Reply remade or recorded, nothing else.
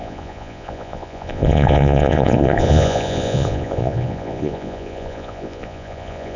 remade